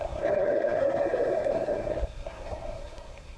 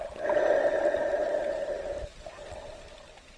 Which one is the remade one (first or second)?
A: first